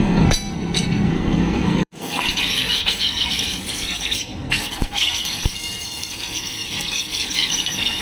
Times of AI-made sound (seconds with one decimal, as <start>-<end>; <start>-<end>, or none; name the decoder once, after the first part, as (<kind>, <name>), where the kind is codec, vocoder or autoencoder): 0.0-8.0 (codec, SNAC)